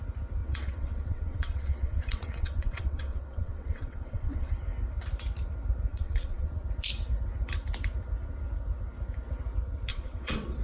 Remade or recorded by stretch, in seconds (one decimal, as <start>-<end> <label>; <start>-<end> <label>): 0.0-0.4 recorded; 0.4-4.5 remade; 4.5-5.9 recorded; 5.9-6.5 remade; 6.5-9.9 recorded; 9.9-10.6 remade